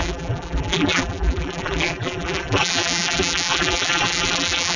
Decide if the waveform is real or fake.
fake